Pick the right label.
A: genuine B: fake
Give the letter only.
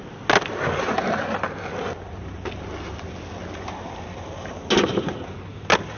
A